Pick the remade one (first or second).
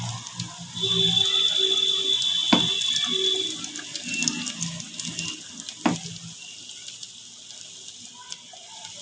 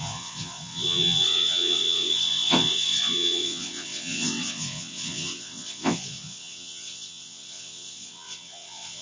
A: second